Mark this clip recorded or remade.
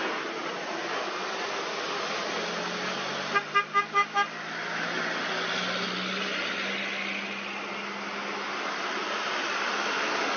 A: recorded